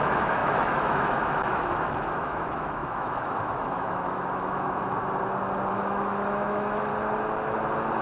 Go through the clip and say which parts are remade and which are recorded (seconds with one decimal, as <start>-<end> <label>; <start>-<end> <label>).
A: 0.0-5.0 remade; 5.0-5.7 recorded; 5.7-6.9 remade; 6.9-8.0 recorded